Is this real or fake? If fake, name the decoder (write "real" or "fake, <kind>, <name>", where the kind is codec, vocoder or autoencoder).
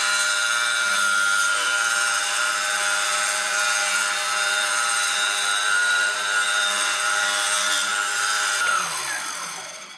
fake, vocoder, BigVGAN v2